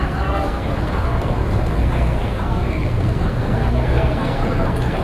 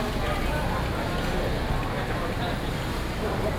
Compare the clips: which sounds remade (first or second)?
first